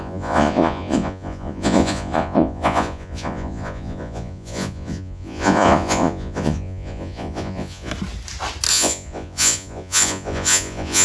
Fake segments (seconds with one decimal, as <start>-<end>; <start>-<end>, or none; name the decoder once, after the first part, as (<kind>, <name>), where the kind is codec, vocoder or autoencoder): 0.0-7.9 (vocoder, Vocos); 8.7-11.0